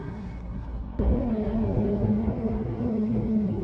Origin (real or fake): fake